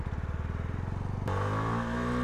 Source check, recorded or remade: recorded